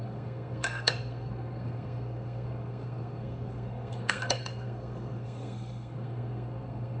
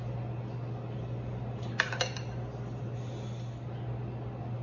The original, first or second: second